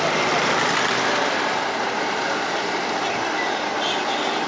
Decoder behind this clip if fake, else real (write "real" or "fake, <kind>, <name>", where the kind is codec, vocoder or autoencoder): real